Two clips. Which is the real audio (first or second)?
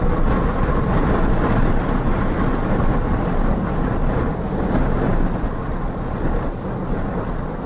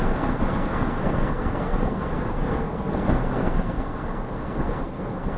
first